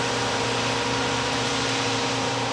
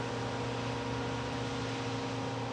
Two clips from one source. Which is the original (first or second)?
second